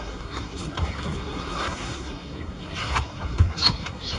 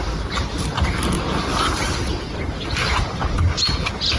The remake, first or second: first